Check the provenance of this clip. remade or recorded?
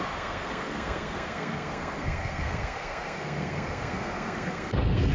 remade